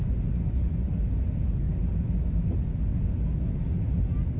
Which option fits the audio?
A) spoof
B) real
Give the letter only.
B